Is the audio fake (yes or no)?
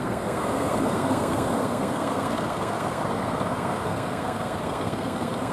yes